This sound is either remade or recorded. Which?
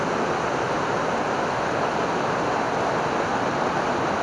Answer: recorded